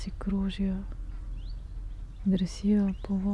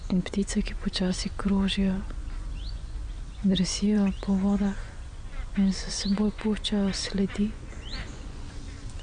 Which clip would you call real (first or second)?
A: first